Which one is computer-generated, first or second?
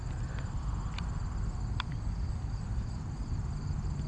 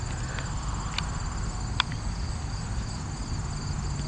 first